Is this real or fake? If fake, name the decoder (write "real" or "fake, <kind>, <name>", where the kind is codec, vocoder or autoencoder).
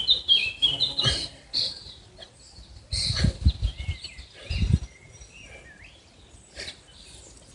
real